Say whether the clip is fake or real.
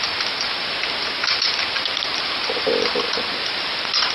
real